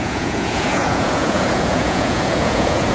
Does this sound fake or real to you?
fake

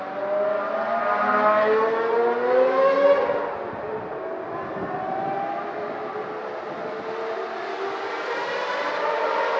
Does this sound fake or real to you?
real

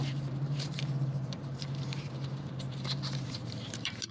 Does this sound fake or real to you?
fake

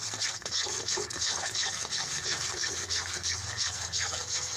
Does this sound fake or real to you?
fake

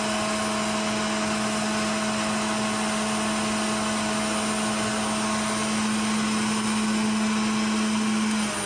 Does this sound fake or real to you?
real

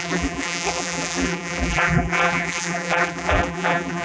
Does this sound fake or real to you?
fake